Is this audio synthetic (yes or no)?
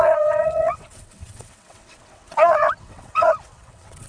yes